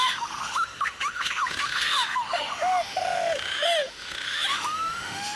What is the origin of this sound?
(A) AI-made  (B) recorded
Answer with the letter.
A